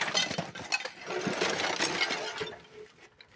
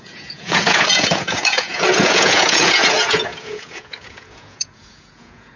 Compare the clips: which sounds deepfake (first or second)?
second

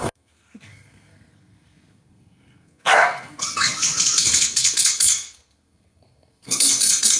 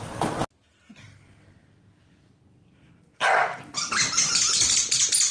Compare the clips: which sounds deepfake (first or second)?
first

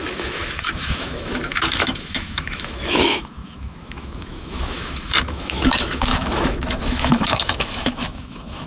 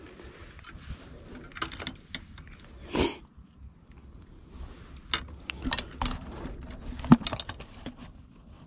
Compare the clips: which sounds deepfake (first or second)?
first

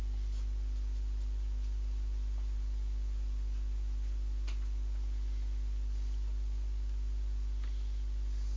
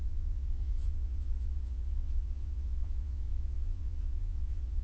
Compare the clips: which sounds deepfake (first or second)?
second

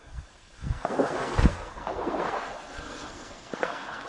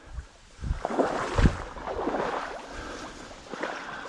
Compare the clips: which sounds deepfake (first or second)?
first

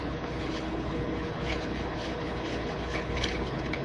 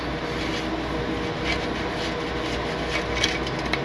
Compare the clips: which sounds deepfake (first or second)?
first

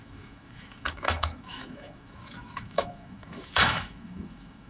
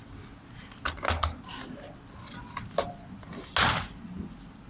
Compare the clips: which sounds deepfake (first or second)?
first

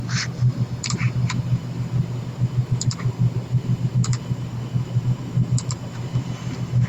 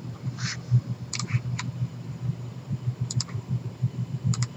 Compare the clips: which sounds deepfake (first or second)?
second